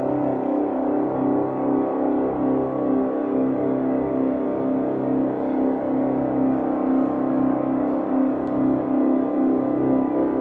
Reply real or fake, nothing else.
fake